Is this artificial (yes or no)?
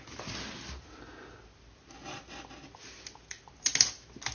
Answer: no